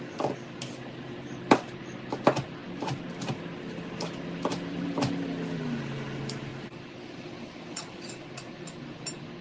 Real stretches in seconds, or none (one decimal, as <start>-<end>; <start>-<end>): 0.0-6.5; 7.0-9.4